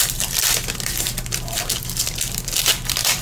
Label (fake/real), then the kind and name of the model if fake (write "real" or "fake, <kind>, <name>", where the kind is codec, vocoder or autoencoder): fake, vocoder, BigVGAN v2